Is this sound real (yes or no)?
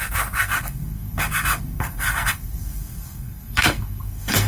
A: no